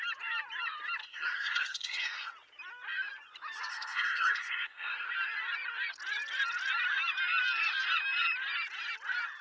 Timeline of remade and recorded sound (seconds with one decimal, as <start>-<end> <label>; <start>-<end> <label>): 0.0-1.0 recorded; 1.0-2.3 remade; 2.3-3.7 recorded; 3.7-5.1 remade; 5.1-9.4 recorded